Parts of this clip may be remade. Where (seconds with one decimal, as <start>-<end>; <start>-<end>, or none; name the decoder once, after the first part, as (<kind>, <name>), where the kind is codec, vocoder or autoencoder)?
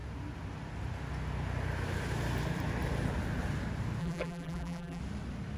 4.0-5.0 (vocoder, BigVGAN v2)